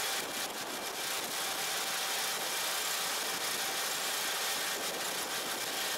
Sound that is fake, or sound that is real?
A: real